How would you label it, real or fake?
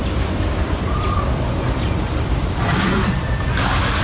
fake